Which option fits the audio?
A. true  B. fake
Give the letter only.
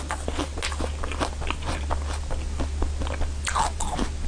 A